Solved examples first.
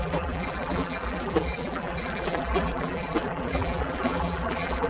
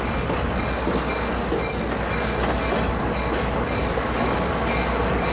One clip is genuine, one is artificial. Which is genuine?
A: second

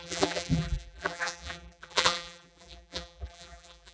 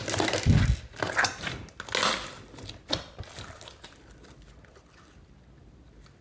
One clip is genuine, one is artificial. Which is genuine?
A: second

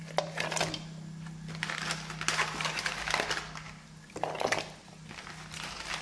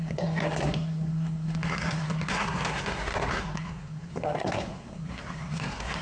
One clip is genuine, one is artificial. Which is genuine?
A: first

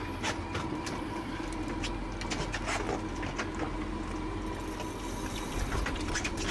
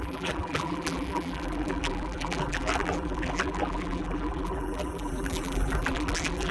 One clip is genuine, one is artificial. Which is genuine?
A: first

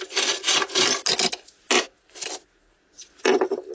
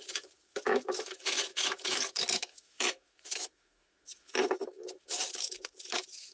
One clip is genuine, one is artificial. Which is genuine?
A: first